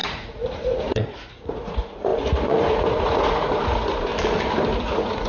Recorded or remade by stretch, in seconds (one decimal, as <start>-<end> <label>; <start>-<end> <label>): 0.0-4.1 remade; 4.1-4.8 recorded; 4.8-5.3 remade